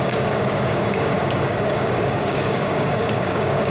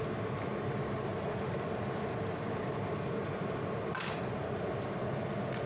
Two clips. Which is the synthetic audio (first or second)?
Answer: first